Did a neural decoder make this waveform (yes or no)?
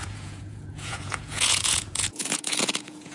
yes